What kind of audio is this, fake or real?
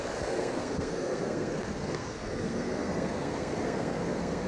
fake